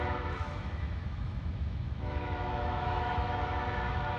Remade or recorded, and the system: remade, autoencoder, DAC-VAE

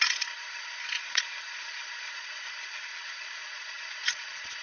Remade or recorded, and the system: remade, vocoder, Vocos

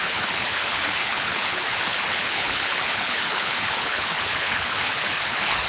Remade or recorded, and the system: remade, codec, HILCodec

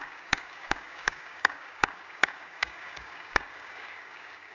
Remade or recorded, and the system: remade, codec, DAC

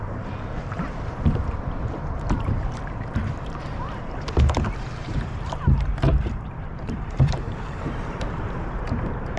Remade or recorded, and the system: remade, vocoder, BigVGAN v2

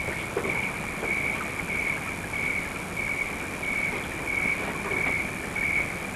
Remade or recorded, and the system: recorded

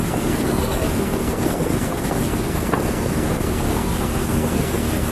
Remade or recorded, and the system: remade, codec, SNAC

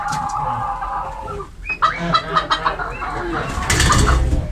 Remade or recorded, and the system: recorded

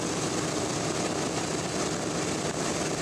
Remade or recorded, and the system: recorded